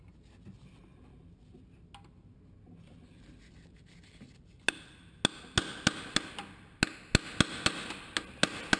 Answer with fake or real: real